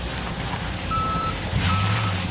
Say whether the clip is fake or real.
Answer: fake